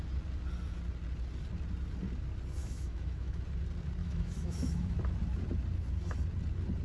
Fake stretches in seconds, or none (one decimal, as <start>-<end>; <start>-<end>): 2.6-3.4; 4.0-5.0